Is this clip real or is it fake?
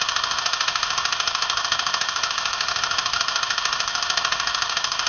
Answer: fake